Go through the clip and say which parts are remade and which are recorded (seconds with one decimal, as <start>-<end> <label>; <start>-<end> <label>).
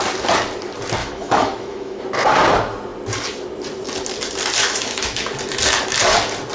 0.0-1.0 recorded; 1.0-2.0 remade; 2.0-4.6 recorded; 4.6-5.2 remade; 5.2-6.5 recorded